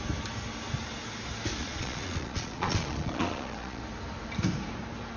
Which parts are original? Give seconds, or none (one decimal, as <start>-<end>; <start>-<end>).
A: 0.0-1.6; 3.8-5.2